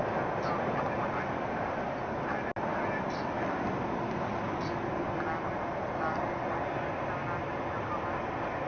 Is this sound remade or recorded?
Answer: recorded